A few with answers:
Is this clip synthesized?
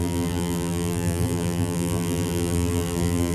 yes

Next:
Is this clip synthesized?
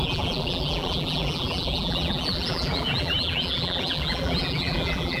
yes